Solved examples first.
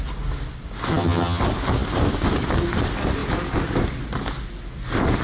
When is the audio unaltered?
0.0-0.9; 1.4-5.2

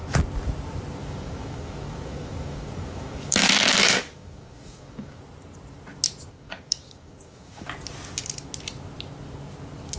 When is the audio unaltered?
0.0-1.0; 5.2-6.3; 7.7-10.0

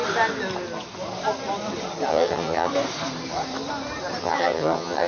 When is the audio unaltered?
0.0-2.1; 2.7-4.2

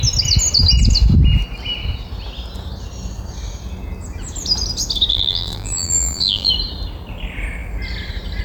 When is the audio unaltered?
0.0-5.1; 6.5-8.4

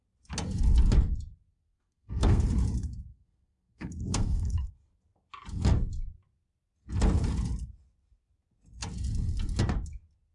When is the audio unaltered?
0.0-1.5; 2.4-3.1; 4.7-10.3

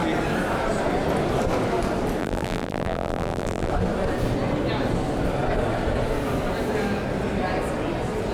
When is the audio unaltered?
0.0-2.2; 3.7-8.3

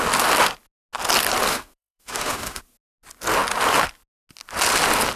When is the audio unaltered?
0.0-1.5; 2.6-5.2

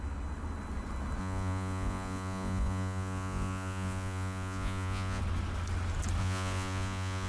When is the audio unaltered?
0.0-1.2; 5.2-6.2